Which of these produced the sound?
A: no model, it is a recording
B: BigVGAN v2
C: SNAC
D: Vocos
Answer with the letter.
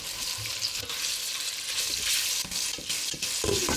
A